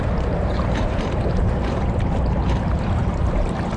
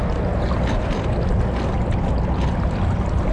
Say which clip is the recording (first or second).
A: second